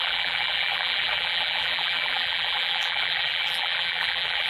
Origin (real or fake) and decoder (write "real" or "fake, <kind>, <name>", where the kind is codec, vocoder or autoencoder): fake, vocoder, BigVGAN v2